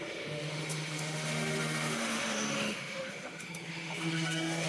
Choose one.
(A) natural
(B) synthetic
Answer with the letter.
B